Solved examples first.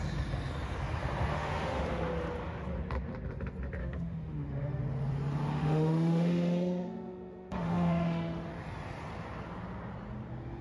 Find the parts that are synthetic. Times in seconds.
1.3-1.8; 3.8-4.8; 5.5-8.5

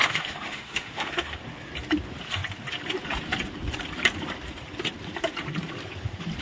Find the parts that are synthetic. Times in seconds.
0.0-1.4

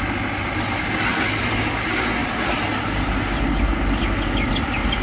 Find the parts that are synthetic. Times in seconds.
none

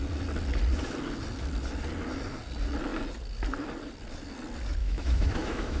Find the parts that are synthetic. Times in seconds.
4.8-5.8

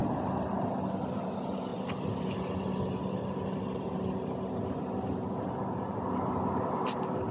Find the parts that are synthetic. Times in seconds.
none

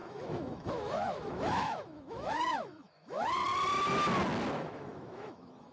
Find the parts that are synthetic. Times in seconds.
0.0-3.4; 4.5-5.7

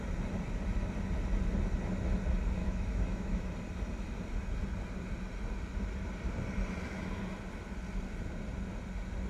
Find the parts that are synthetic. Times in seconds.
2.6-3.5